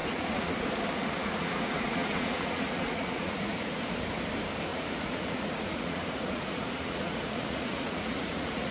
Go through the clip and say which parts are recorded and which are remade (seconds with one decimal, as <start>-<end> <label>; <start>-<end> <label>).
0.0-0.5 remade; 0.5-1.2 recorded; 1.2-3.8 remade; 3.8-4.7 recorded; 4.7-8.7 remade